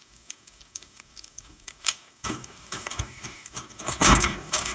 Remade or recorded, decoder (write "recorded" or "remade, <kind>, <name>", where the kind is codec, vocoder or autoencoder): remade, codec, DAC